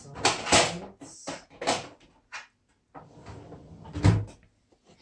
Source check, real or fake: real